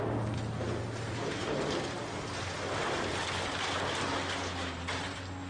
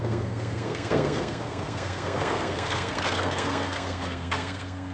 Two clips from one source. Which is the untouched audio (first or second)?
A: first